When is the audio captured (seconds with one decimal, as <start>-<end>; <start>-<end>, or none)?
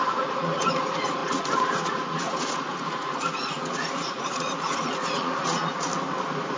5.9-6.6